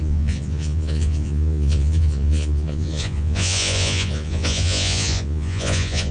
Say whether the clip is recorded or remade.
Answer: remade